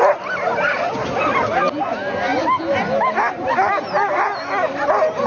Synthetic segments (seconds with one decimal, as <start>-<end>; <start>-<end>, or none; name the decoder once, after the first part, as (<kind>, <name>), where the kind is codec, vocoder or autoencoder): none